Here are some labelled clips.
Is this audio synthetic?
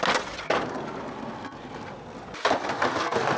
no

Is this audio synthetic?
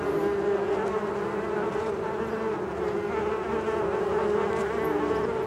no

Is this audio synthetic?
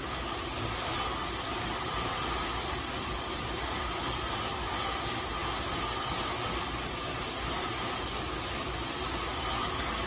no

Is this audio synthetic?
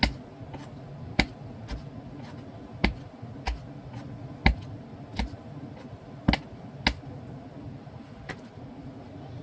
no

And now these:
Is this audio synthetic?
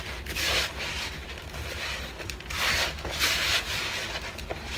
no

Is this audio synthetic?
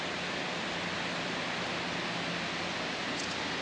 no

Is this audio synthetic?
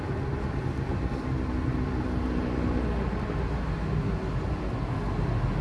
no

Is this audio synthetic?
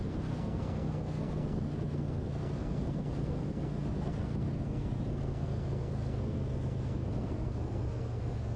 yes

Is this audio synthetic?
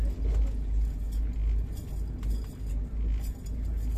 no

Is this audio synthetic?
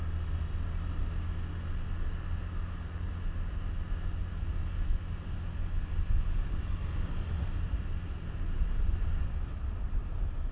no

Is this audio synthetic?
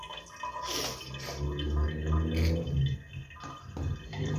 no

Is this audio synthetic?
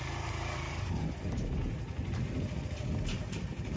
no